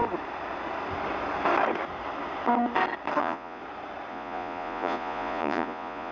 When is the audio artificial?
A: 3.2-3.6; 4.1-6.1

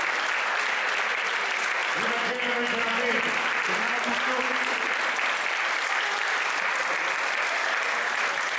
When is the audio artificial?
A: none

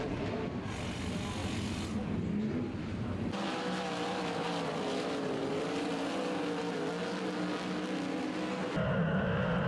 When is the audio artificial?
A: none

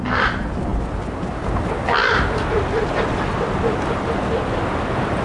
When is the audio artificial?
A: none

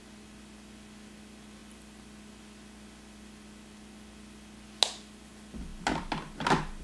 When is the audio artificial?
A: none

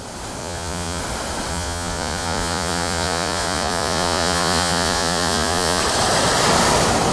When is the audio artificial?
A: 0.4-1.0; 1.5-5.8

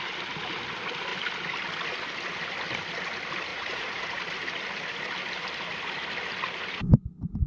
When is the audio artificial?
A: 3.5-4.2